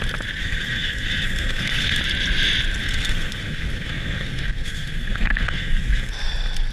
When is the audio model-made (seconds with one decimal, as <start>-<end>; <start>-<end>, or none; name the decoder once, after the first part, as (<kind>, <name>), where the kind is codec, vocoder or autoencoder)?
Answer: 0.4-2.0 (codec, SNAC); 2.8-6.1